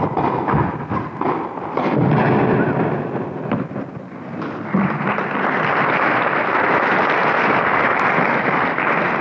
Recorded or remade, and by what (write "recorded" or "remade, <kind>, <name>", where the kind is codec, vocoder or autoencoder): recorded